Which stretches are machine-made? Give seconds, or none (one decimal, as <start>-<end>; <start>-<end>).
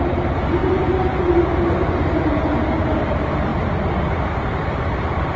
0.6-1.5; 3.5-4.1; 4.5-5.4